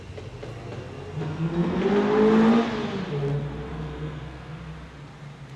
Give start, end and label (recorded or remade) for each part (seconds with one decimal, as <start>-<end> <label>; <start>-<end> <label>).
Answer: 0.0-1.2 recorded; 1.2-1.8 remade; 1.8-3.7 recorded; 3.7-4.6 remade; 4.6-5.6 recorded